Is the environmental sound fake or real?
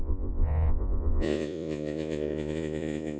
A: fake